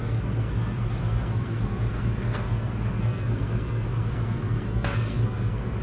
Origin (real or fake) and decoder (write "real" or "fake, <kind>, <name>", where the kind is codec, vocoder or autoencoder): fake, codec, SNAC